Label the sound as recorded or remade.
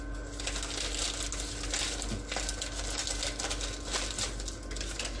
recorded